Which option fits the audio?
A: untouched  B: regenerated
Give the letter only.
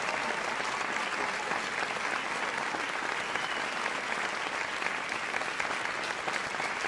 A